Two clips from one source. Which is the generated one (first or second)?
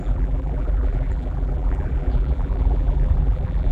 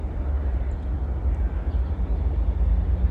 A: first